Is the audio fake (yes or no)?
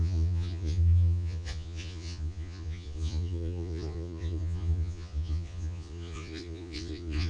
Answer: yes